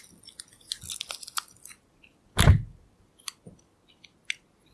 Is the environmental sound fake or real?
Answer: real